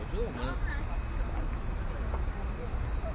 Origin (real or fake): real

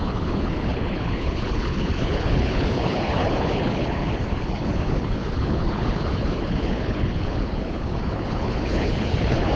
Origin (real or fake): fake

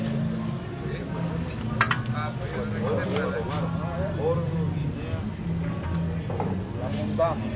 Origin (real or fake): real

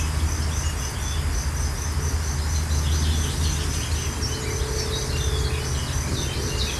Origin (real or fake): real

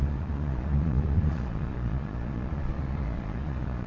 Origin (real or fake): fake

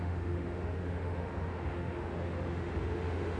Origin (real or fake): fake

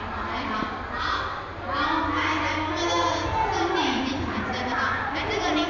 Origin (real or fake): real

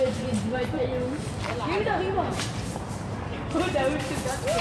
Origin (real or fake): real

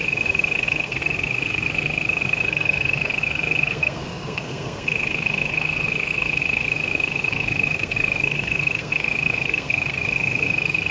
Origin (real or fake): fake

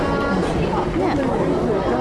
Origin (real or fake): real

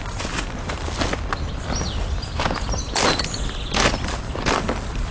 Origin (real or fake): real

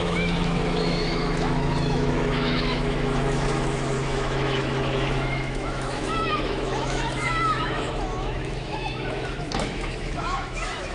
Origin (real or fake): fake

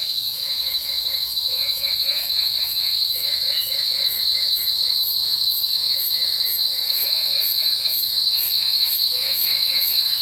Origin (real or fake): fake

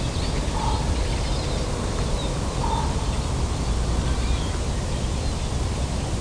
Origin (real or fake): real